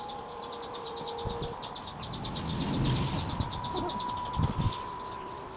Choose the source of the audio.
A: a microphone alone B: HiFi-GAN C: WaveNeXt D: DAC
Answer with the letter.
A